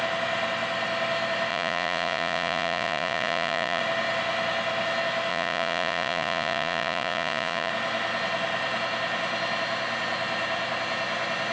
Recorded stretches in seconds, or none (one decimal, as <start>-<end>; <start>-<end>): 0.0-1.5; 3.8-5.3; 7.7-11.5